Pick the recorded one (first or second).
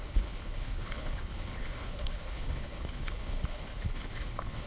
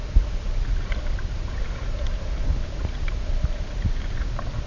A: second